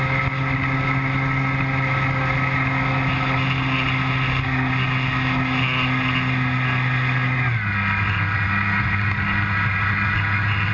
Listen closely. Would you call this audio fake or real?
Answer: real